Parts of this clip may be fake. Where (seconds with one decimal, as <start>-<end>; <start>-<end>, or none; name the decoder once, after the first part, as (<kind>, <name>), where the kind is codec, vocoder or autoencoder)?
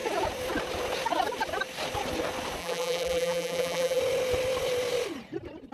2.6-4.0 (vocoder, BigVGAN v2)